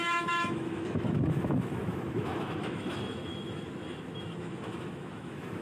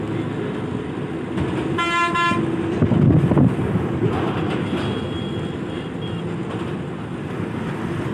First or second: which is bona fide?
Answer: second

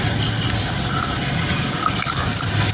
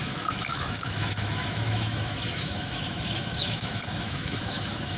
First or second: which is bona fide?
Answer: first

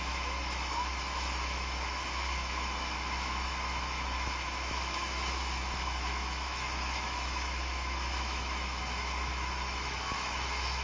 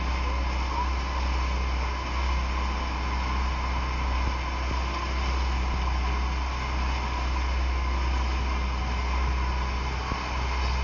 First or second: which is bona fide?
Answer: second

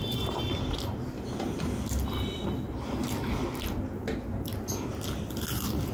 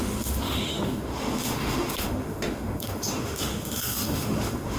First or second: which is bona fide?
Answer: first